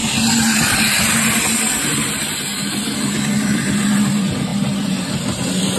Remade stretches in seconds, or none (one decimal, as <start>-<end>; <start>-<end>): none